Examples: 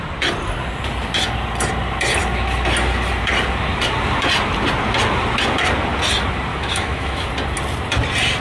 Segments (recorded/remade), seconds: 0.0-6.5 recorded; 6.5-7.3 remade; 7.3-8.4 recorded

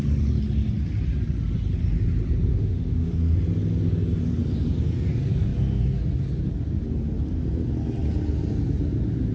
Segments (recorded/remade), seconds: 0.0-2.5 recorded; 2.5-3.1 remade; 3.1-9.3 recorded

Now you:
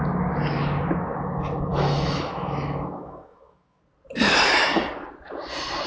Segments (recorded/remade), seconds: 0.0-1.7 recorded; 1.7-3.8 remade; 3.8-5.9 recorded

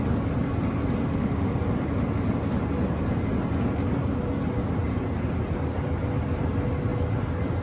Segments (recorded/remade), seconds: 0.0-1.0 recorded; 1.0-1.5 remade; 1.5-7.6 recorded

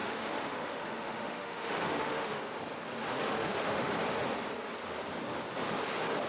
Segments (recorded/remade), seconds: 0.0-2.4 remade; 2.4-3.1 recorded; 3.1-3.9 remade; 3.9-6.3 recorded

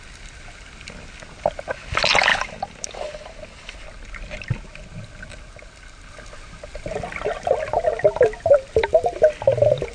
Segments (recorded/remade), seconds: 0.0-9.9 recorded